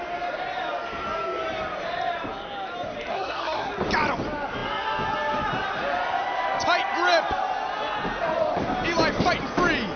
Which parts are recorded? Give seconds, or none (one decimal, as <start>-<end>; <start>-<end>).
0.0-3.1; 3.7-10.0